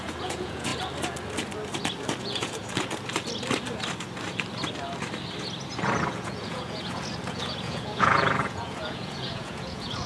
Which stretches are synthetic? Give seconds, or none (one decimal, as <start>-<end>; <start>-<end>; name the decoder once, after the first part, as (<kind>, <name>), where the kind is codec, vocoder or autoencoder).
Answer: 0.0-0.7 (vocoder, Vocos); 2.2-2.6; 6.1-10.1